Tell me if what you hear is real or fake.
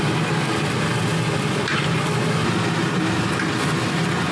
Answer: real